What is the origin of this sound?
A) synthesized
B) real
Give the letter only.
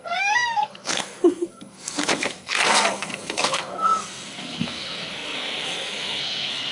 A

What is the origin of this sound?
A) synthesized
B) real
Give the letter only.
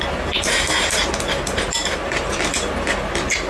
B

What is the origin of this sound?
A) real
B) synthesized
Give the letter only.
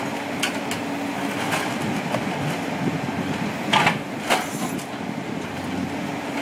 A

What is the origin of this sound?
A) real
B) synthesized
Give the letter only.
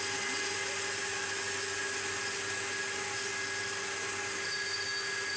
A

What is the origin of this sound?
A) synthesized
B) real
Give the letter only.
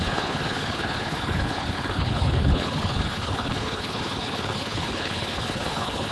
A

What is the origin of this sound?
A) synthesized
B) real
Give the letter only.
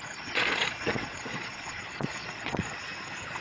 A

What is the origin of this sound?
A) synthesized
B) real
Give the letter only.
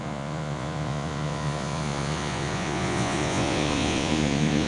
A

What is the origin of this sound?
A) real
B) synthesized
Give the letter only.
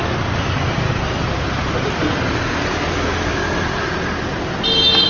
A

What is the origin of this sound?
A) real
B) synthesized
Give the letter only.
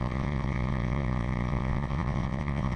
B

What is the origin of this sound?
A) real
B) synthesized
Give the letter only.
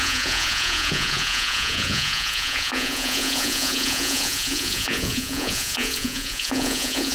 B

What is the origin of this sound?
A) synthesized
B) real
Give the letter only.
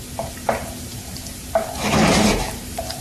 A